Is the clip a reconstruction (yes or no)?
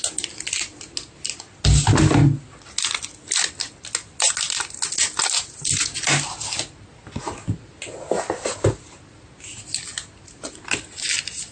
no